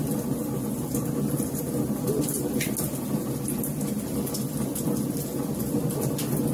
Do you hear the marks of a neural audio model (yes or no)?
no